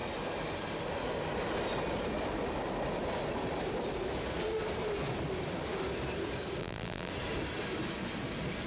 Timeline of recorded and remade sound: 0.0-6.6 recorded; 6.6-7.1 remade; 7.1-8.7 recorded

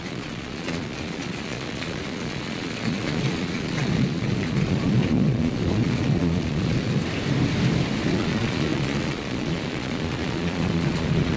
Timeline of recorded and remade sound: 0.0-7.0 remade; 7.0-8.1 recorded; 8.1-11.4 remade

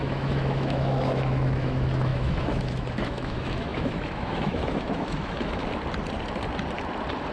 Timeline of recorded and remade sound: 0.0-5.6 remade; 5.6-7.3 recorded

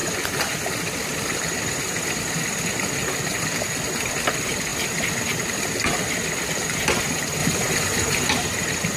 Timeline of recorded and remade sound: 0.0-3.7 remade; 3.7-7.4 recorded; 7.4-8.3 remade; 8.3-9.0 recorded

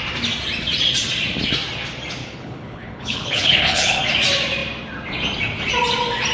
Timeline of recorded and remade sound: 0.0-2.2 recorded; 2.2-4.0 remade; 4.0-6.3 recorded

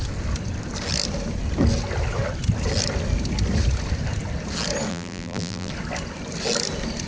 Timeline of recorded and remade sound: 0.0-4.9 recorded; 4.9-5.7 remade; 5.7-7.1 recorded

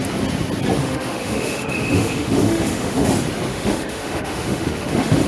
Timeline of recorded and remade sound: 0.0-0.8 recorded; 0.8-3.1 remade; 3.1-3.5 recorded; 3.5-5.3 remade

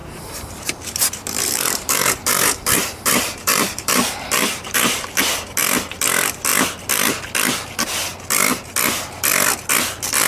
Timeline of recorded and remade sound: 0.0-5.2 remade; 5.2-10.3 recorded